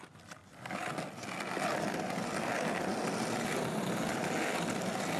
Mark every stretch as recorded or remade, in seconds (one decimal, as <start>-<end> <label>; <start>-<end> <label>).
0.0-5.2 recorded